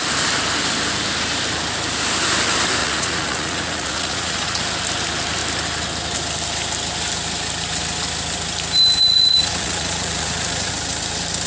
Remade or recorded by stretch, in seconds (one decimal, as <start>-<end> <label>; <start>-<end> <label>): 0.0-2.8 recorded; 2.8-4.6 remade; 4.6-9.0 recorded; 9.0-10.7 remade; 10.7-11.5 recorded